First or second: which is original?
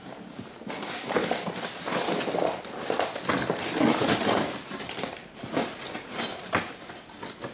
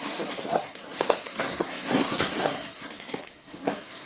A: first